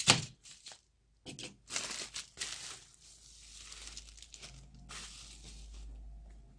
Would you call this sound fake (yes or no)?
no